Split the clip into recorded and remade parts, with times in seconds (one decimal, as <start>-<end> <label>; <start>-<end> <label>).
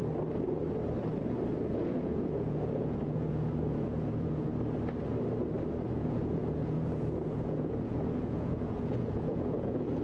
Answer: 0.0-1.7 recorded; 1.7-4.5 remade; 4.5-5.9 recorded; 5.9-10.0 remade